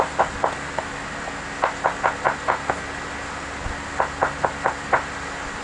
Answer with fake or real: real